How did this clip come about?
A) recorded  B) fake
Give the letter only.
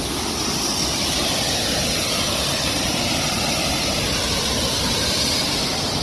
A